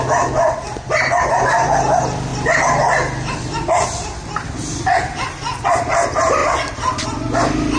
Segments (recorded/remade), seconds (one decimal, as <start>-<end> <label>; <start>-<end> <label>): 0.0-7.8 recorded